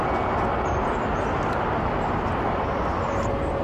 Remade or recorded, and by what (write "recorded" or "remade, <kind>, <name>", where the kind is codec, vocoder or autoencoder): recorded